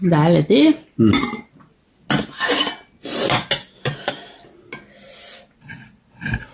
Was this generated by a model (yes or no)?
no